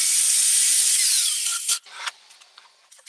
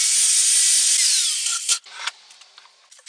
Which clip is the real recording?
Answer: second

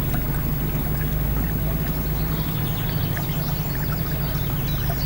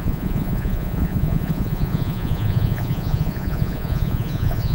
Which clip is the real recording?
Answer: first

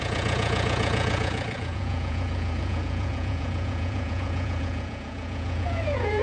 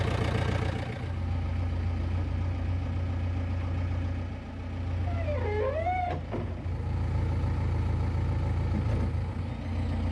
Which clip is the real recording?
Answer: second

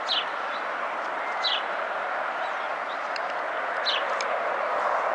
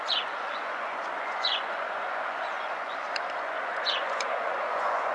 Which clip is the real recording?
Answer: first